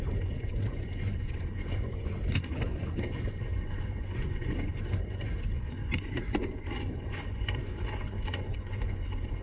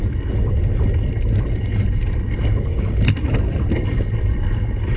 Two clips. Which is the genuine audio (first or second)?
second